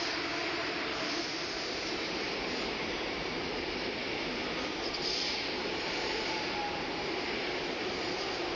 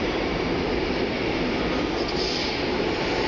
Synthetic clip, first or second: first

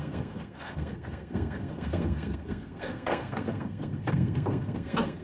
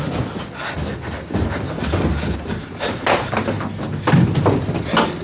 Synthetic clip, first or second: first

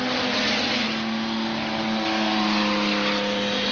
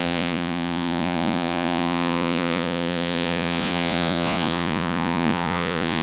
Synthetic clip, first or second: second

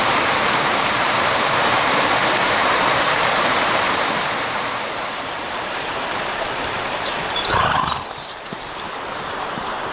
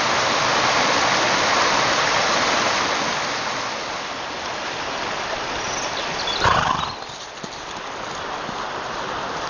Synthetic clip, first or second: first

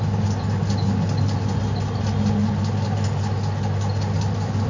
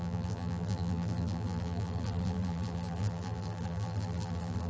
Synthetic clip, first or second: second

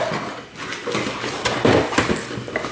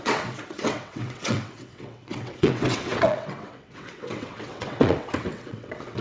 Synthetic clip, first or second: second